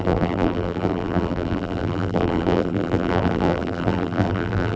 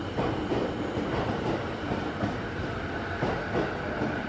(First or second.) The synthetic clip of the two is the first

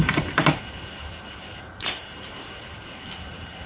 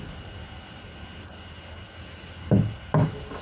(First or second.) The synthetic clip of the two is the first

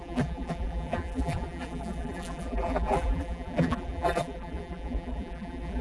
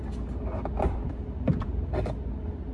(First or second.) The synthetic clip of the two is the first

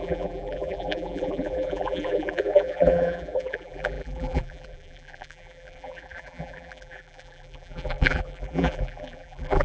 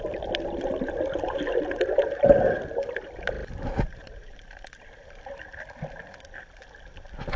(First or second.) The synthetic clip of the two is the first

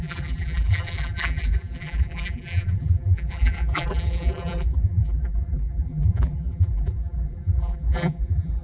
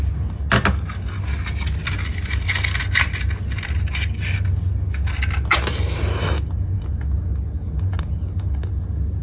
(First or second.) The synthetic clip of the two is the first